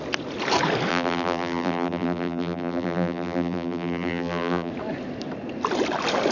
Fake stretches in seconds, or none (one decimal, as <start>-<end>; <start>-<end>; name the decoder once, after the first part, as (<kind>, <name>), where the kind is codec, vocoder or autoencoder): 0.9-4.7 (vocoder, BigVGAN v2)